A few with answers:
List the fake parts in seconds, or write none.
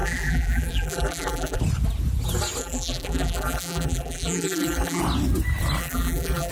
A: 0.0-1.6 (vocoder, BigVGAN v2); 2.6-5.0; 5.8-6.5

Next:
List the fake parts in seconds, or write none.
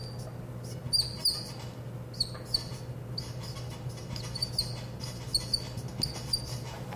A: none